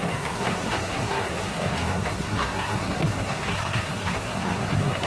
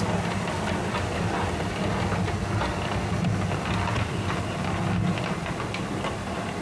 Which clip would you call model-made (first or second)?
first